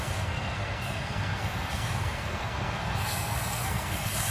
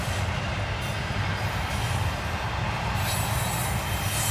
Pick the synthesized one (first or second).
first